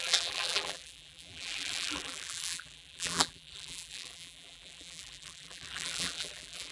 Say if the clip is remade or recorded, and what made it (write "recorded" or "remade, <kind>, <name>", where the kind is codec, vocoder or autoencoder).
remade, vocoder, BigVGAN v2